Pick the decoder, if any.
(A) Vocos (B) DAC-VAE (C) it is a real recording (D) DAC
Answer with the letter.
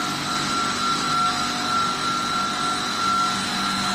C